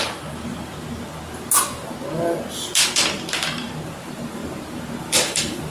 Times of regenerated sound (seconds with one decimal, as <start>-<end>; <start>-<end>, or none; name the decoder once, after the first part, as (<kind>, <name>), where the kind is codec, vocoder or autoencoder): 0.0-0.6 (vocoder, BigVGAN v2); 4.0-4.4; 5.0-5.7